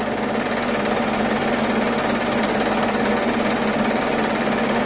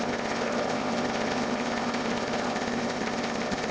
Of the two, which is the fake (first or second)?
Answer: second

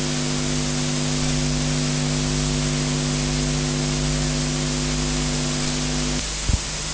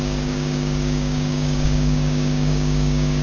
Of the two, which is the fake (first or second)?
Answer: second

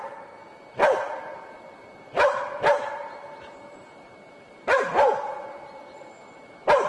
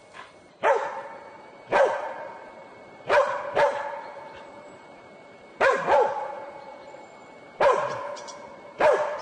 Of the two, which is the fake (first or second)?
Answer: second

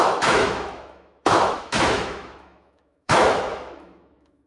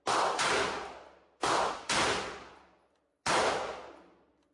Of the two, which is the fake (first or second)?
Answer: first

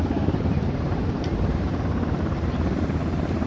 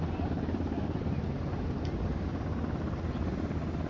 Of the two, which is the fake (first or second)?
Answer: first